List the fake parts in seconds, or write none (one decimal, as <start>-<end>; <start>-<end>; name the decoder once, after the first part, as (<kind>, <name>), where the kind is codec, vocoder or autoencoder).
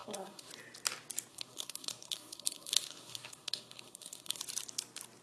0.0-0.5 (codec, SNAC); 1.3-4.4